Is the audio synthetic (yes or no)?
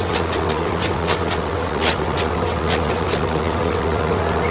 yes